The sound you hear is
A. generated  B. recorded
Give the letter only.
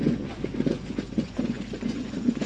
A